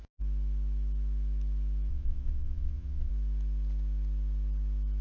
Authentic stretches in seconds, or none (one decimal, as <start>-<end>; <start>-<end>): 0.0-1.9; 3.1-5.0